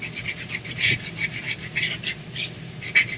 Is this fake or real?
real